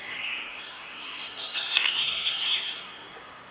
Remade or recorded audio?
remade